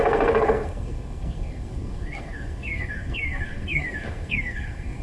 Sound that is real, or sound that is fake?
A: fake